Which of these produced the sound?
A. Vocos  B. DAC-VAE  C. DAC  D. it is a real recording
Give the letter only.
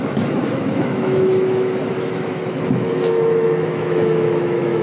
B